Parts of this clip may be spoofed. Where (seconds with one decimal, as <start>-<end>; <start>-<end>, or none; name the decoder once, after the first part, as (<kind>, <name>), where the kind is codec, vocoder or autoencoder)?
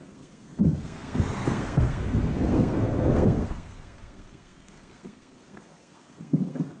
0.0-6.8 (codec, SNAC)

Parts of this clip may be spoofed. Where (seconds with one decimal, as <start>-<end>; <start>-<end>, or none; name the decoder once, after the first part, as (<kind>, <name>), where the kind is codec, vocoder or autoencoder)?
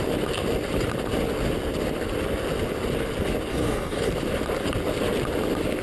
3.5-4.1 (codec, DAC)